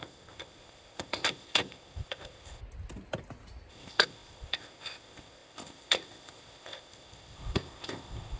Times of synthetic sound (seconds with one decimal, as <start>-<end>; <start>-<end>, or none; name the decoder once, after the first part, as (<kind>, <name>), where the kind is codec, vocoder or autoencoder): 0.0-2.6 (codec, ZipCodec); 3.7-8.4